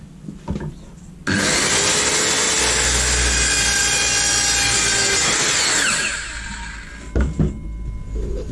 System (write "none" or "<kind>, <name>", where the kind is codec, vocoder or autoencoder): none